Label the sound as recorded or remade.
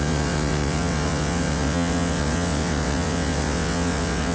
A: remade